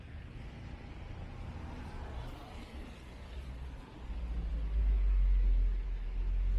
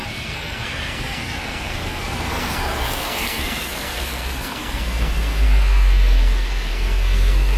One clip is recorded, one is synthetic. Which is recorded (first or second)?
first